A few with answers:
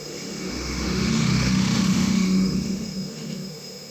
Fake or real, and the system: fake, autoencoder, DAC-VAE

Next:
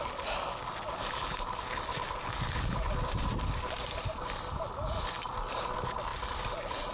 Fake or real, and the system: real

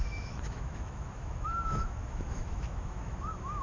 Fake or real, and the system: fake, autoencoder, DAC-VAE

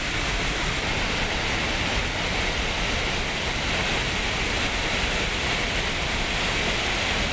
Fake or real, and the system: real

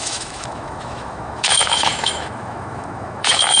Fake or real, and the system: fake, autoencoder, DAC-VAE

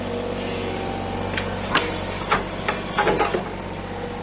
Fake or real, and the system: real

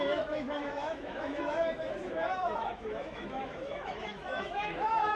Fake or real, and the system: fake, autoencoder, DAC-VAE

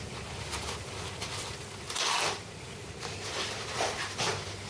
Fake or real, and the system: real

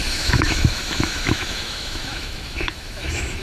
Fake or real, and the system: fake, autoencoder, DAC-VAE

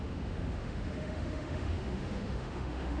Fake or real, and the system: fake, autoencoder, DAC-VAE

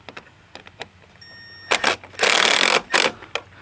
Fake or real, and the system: real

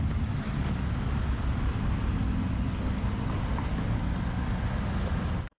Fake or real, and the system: real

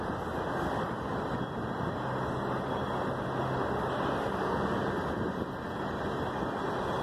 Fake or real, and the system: real